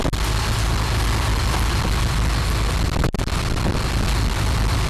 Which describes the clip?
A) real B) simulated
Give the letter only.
A